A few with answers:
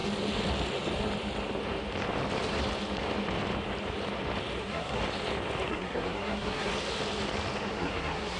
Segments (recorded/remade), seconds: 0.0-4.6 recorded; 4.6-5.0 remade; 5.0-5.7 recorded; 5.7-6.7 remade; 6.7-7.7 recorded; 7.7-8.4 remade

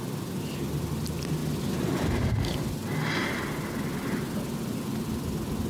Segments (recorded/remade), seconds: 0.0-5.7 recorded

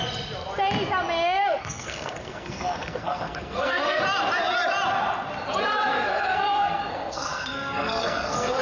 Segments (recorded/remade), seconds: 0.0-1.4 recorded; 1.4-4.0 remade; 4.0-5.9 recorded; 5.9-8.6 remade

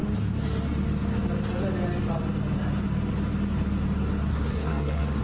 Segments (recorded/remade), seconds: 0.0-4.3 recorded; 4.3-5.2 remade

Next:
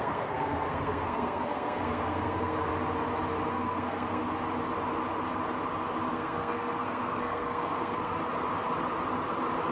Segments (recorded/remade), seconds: 0.0-2.7 remade; 2.7-3.5 recorded; 3.5-4.2 remade; 4.2-6.1 recorded; 6.1-8.2 remade; 8.2-9.7 recorded